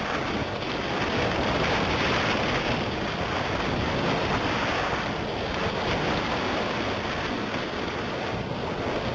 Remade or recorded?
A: recorded